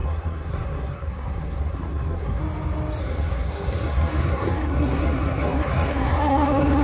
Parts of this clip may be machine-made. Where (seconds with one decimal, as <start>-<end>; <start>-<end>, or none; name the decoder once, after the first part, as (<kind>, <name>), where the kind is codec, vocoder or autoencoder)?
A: 0.0-2.4 (codec, SNAC); 3.0-6.8